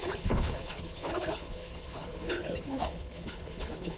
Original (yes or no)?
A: no